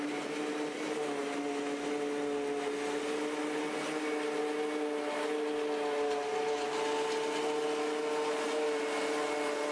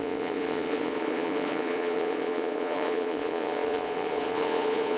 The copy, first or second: second